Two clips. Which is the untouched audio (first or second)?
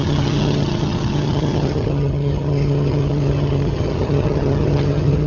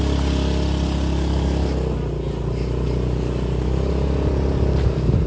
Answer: second